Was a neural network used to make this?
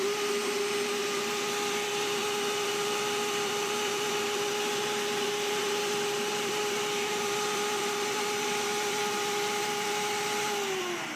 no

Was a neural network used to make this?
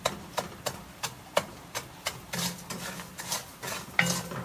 no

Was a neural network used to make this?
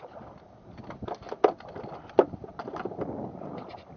no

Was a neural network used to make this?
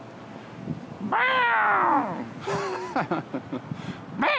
no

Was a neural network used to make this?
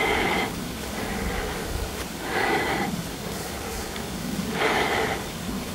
yes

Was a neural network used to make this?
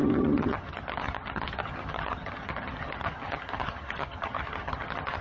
yes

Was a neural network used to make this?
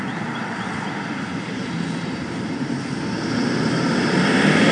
yes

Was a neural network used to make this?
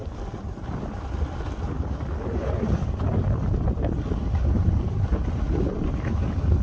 no